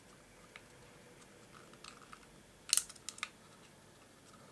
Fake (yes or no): no